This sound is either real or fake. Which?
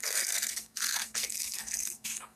fake